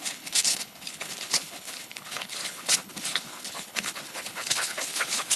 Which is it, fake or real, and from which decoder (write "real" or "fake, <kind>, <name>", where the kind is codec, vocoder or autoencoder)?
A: fake, codec, HILCodec